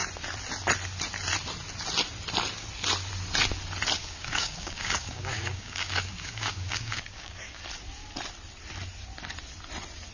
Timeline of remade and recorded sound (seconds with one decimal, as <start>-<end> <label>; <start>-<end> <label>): 0.0-4.0 recorded; 4.0-7.6 remade; 7.6-10.1 recorded